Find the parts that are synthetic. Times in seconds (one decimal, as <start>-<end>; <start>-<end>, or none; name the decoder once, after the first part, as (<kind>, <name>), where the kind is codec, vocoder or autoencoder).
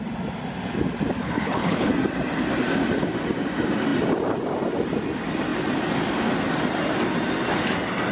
1.2-1.9 (codec, HILCodec)